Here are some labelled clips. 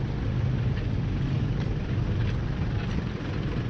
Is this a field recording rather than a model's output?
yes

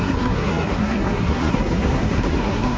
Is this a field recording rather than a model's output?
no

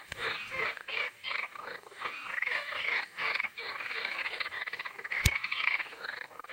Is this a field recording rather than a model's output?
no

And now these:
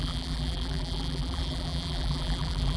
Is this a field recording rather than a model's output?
no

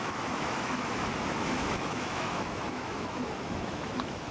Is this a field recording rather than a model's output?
no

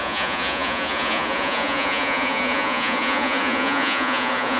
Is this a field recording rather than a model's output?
no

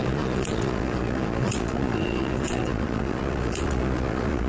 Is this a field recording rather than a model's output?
no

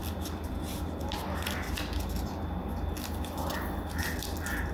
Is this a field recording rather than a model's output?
yes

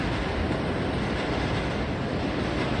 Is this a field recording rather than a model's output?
yes